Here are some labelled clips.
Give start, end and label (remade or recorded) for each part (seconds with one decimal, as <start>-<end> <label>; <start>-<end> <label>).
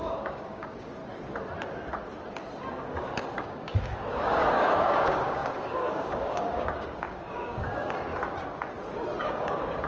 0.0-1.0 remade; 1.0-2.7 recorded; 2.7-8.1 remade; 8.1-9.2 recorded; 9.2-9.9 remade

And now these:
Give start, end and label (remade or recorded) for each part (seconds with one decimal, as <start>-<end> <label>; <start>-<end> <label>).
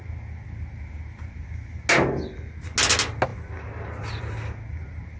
0.0-5.2 recorded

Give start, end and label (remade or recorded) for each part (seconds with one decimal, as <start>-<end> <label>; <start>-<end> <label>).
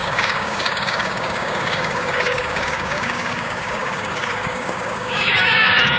0.0-6.0 remade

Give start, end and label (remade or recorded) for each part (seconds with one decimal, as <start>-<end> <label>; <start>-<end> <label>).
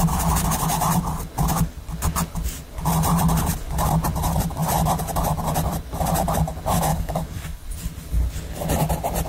0.0-6.9 recorded; 6.9-7.6 remade; 7.6-9.3 recorded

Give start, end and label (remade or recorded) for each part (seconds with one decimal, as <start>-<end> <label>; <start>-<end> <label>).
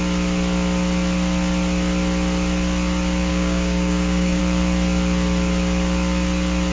0.0-3.3 recorded; 3.3-4.4 remade; 4.4-6.7 recorded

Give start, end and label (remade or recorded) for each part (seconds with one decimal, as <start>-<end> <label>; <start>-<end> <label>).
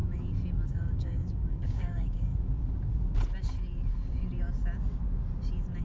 0.0-0.7 recorded; 0.7-2.3 remade; 2.3-5.8 recorded